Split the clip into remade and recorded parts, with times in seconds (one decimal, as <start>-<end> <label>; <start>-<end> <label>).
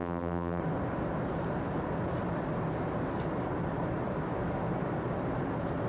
0.0-0.6 remade; 0.6-5.9 recorded